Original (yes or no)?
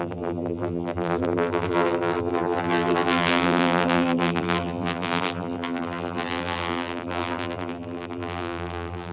no